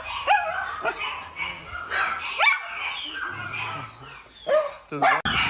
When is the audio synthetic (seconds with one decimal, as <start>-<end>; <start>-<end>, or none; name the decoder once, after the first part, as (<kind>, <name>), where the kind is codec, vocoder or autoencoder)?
none